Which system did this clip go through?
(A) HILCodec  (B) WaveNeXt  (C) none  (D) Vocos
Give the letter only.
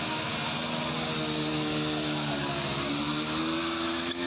C